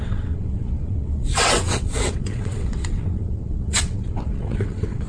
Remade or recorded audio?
remade